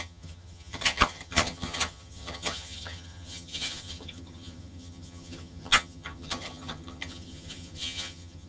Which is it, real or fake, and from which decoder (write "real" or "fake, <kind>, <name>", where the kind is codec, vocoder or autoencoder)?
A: fake, vocoder, HiFi-GAN